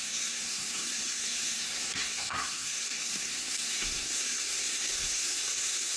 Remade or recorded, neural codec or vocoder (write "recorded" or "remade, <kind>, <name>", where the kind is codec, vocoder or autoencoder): remade, codec, SNAC